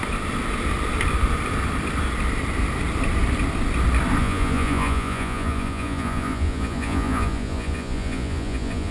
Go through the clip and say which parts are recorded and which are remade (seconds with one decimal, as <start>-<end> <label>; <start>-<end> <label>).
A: 0.0-4.2 recorded; 4.2-8.9 remade